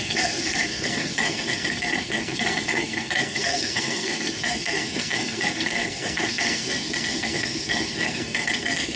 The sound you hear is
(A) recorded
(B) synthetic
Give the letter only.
B